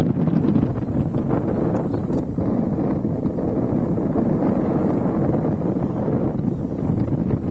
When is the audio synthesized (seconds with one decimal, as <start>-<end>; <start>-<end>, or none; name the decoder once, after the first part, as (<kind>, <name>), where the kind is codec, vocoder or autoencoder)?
none